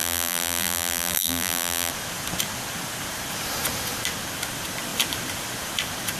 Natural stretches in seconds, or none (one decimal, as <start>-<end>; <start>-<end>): 1.9-6.2